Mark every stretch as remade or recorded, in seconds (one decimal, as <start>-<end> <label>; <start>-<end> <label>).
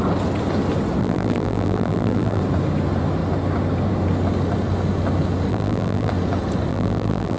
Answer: 0.0-1.0 recorded; 1.0-2.4 remade; 2.4-5.5 recorded; 5.5-6.1 remade; 6.1-6.7 recorded; 6.7-7.4 remade